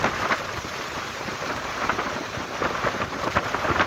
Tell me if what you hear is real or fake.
fake